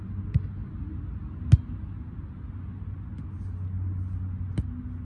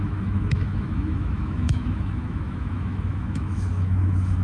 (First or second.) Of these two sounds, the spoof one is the second